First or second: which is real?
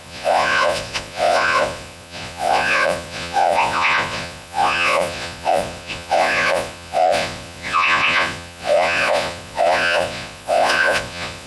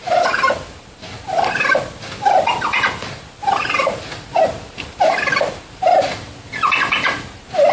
second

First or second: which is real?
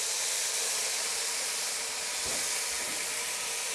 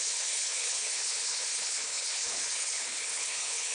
first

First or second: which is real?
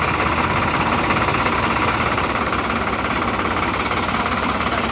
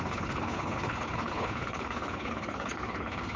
first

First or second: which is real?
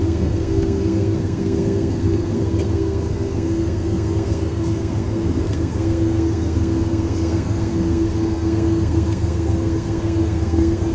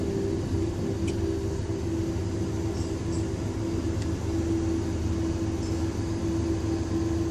second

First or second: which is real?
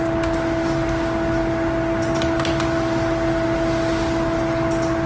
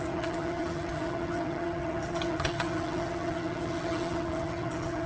first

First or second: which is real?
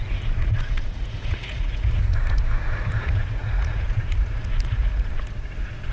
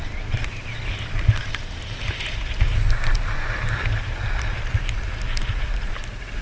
second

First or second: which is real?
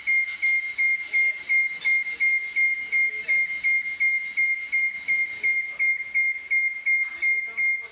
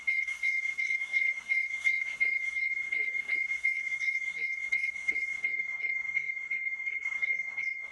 first